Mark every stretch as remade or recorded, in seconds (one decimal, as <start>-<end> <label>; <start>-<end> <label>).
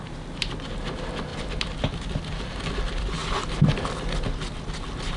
0.0-5.2 recorded